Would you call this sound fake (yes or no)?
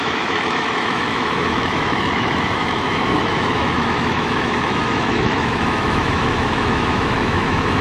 yes